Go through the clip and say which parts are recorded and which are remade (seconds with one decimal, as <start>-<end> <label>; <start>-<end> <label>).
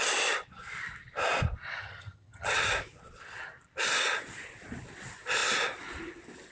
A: 0.0-1.8 recorded; 1.8-2.7 remade; 2.7-6.5 recorded